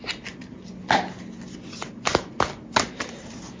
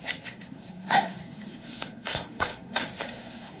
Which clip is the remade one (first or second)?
second